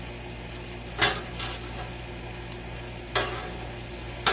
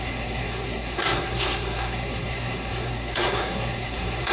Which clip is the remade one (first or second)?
second